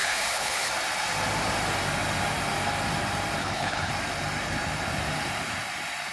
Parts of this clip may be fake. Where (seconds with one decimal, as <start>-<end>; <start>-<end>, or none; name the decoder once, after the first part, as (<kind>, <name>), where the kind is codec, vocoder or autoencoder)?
0.0-0.7 (codec, HILCodec); 3.4-3.9